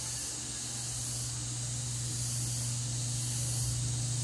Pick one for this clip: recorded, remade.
recorded